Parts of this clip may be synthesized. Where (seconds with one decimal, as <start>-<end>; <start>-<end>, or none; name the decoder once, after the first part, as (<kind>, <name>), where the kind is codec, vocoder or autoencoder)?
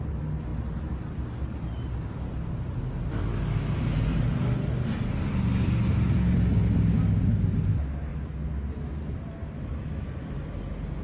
none